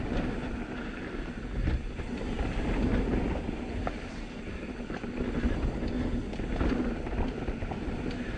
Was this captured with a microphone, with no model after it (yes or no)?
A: yes